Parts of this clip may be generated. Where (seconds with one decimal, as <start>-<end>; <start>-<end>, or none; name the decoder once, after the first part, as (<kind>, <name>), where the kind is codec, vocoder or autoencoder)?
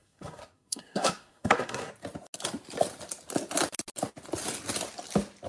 0.0-1.9 (codec, SNAC)